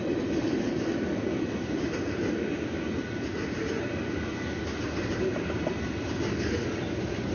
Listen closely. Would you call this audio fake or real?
real